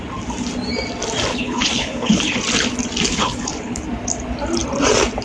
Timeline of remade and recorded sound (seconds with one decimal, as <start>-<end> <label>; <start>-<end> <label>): 0.0-1.3 recorded; 1.3-2.4 remade; 2.4-3.1 recorded; 3.1-3.8 remade; 3.8-5.2 recorded